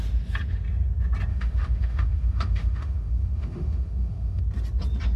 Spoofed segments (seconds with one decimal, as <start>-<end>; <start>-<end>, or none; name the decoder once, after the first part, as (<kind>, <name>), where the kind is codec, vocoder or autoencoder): 1.3-4.4 (autoencoder, DAC-VAE)